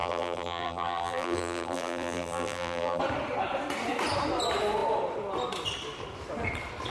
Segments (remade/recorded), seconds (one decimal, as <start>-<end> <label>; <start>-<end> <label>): 0.0-3.0 remade; 3.0-6.9 recorded